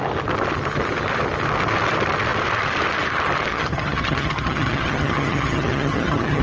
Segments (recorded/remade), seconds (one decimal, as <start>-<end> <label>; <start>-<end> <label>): 0.0-3.5 recorded; 3.5-6.4 remade